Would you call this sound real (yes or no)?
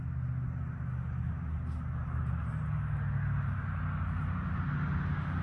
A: yes